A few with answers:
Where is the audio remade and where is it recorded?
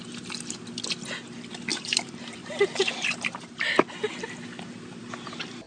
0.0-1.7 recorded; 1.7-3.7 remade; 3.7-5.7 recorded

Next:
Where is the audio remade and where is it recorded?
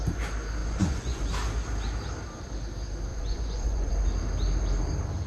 0.0-0.6 recorded; 0.6-1.3 remade; 1.3-3.1 recorded; 3.1-3.9 remade; 3.9-5.3 recorded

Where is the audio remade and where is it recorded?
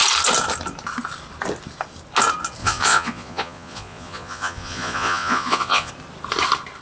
0.0-2.6 recorded; 2.6-5.9 remade; 5.9-6.8 recorded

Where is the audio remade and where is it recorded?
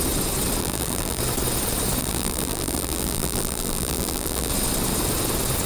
0.0-0.6 recorded; 0.6-1.2 remade; 1.2-2.0 recorded; 2.0-4.5 remade; 4.5-5.7 recorded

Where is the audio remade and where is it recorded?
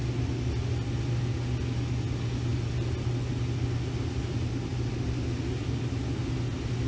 0.0-6.9 recorded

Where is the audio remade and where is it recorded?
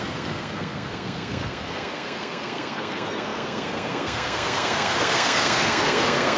0.0-6.4 remade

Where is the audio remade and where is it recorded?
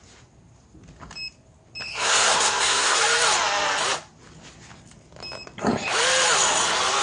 0.0-1.9 recorded; 1.9-3.0 remade; 3.0-7.0 recorded